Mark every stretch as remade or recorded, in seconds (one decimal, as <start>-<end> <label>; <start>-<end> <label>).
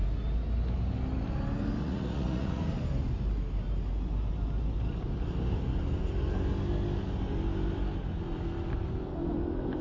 0.0-1.8 recorded; 1.8-2.6 remade; 2.6-9.8 recorded